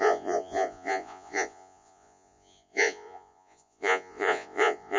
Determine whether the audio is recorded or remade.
remade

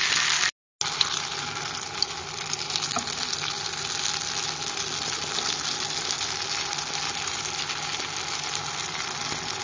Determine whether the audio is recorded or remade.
recorded